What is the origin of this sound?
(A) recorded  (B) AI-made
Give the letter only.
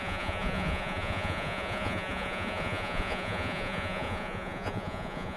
B